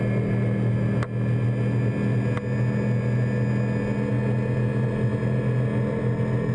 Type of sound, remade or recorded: recorded